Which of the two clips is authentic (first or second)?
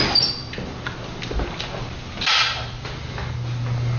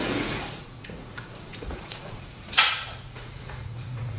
first